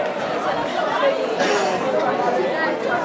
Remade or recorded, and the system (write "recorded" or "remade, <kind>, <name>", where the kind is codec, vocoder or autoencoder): recorded